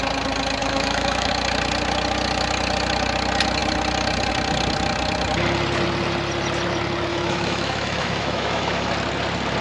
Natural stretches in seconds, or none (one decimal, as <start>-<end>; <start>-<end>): 0.0-0.6; 1.3-7.1; 8.9-9.6